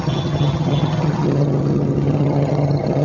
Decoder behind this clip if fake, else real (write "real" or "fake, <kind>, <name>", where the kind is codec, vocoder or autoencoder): fake, vocoder, HiFi-GAN